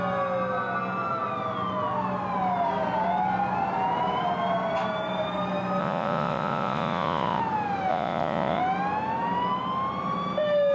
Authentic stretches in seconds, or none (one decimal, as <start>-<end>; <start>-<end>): 0.0-5.8; 7.4-7.9; 8.6-10.7